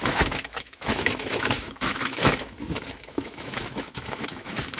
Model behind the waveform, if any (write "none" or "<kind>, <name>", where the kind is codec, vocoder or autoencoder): autoencoder, DAC-VAE